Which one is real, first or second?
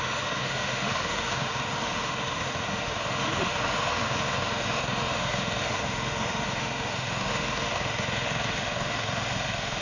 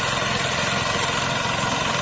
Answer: second